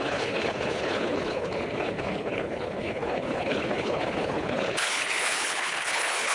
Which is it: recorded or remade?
remade